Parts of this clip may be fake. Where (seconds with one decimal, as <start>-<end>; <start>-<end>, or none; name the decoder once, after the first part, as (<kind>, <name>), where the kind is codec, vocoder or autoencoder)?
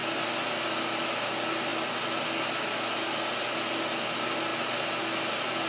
none